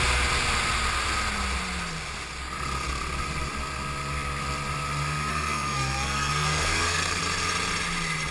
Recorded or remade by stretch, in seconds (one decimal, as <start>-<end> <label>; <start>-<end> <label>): 0.0-5.3 recorded; 5.3-7.2 remade; 7.2-8.3 recorded